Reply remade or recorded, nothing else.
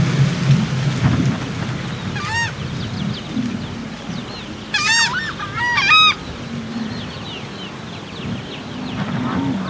recorded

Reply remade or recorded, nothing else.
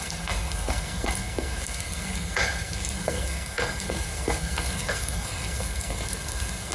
remade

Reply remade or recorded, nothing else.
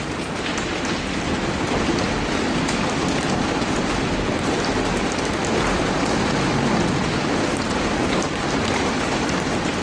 remade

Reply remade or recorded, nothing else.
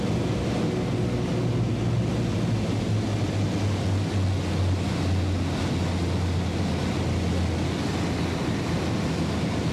recorded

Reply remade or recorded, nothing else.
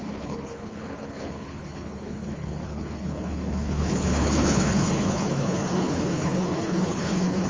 remade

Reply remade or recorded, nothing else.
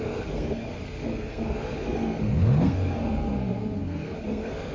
remade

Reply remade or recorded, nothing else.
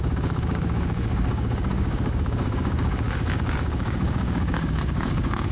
remade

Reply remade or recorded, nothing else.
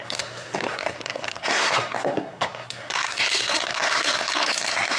remade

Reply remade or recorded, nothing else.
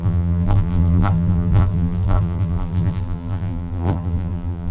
remade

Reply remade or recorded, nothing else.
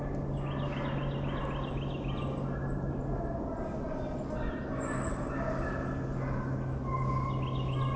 recorded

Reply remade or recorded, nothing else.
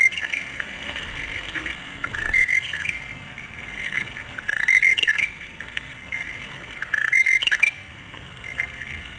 remade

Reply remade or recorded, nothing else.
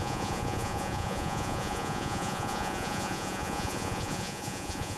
remade